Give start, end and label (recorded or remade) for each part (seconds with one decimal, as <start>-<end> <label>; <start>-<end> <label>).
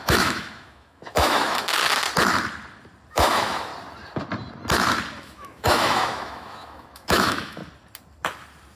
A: 0.0-1.8 remade; 1.8-3.1 recorded; 3.1-3.7 remade; 3.7-5.2 recorded; 5.2-7.6 remade; 7.6-8.8 recorded